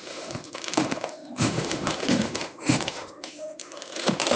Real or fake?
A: fake